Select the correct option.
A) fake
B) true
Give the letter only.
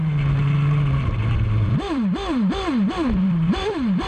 A